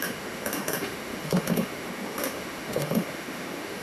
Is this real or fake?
fake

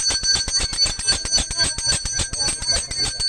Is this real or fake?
real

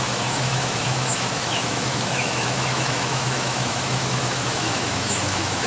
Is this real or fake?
fake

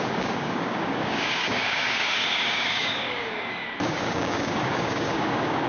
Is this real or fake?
fake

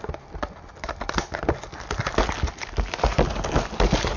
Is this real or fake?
real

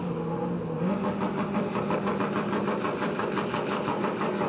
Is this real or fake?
real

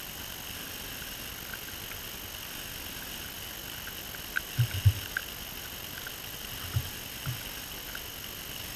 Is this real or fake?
real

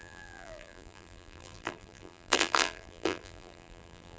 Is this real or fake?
fake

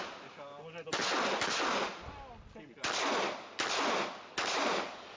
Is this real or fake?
real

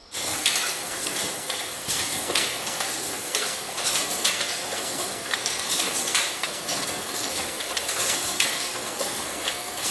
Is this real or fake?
fake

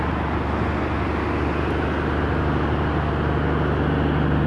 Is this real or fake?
real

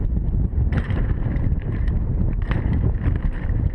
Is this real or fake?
fake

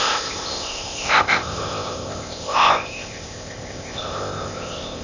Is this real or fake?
fake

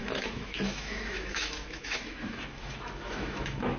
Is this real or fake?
fake